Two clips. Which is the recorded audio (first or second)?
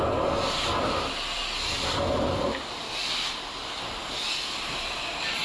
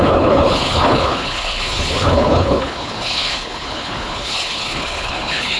first